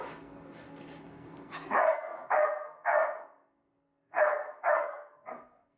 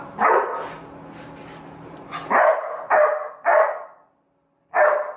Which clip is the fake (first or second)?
first